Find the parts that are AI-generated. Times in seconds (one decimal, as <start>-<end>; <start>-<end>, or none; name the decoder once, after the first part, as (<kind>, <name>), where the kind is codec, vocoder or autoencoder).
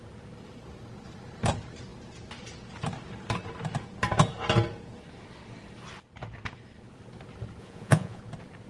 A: 7.6-8.2 (vocoder, Vocos)